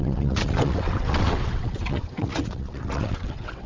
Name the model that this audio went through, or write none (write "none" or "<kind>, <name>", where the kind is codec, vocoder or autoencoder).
vocoder, WaveNeXt